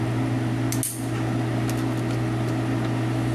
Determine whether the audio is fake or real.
real